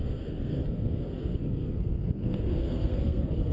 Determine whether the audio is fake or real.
fake